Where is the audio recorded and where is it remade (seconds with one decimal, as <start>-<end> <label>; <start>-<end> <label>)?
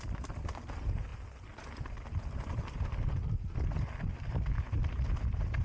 0.0-5.6 recorded